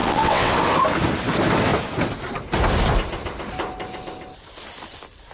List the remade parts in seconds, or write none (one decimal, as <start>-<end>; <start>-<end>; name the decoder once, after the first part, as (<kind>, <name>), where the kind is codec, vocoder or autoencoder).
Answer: 0.0-0.5 (vocoder, WaveNeXt)